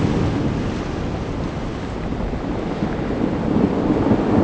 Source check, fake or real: real